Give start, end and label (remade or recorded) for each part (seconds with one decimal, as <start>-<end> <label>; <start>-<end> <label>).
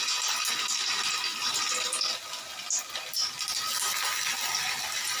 0.0-5.2 recorded